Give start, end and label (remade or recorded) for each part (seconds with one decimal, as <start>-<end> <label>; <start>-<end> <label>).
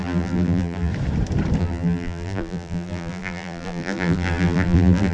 0.0-0.9 remade; 0.9-1.6 recorded; 1.6-5.1 remade